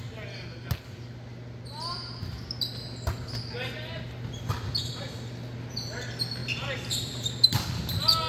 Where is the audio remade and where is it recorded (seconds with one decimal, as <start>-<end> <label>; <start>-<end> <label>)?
0.0-6.4 recorded; 6.4-7.6 remade; 7.6-8.3 recorded

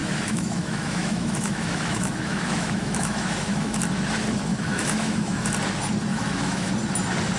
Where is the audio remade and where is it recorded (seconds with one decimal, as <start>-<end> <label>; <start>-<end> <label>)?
0.0-3.8 remade; 3.8-4.5 recorded; 4.5-5.5 remade; 5.5-6.1 recorded; 6.1-6.7 remade; 6.7-7.4 recorded